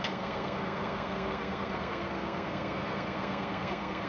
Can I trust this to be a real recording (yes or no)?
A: no